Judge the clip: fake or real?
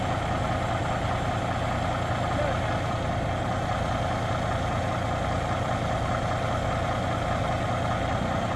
real